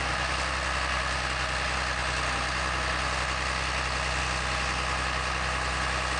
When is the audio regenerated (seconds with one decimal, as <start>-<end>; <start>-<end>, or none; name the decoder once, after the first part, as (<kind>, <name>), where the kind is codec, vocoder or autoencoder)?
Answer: none